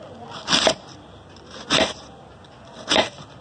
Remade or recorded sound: recorded